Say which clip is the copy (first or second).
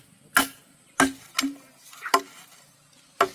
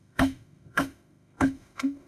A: second